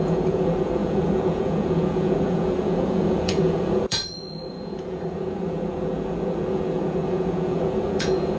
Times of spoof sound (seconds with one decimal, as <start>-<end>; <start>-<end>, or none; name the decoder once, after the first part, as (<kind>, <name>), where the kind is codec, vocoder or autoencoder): 0.0-8.4 (vocoder, Vocos)